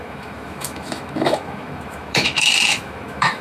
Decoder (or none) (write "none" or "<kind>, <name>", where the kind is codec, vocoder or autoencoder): autoencoder, DAC-VAE